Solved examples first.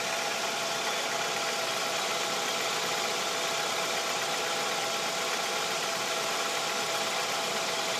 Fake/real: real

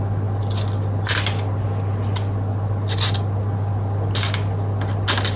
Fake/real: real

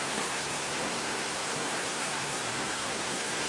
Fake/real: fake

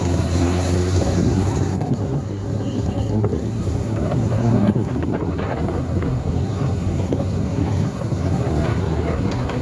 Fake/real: fake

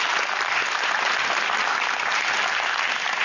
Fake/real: real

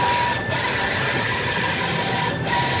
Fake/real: real